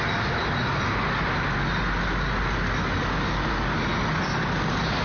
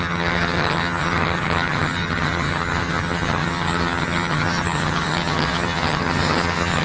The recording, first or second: first